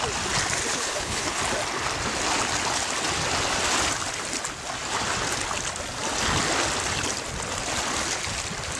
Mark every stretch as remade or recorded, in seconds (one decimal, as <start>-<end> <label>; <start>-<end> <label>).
0.0-0.7 recorded; 0.7-1.4 remade; 1.4-8.8 recorded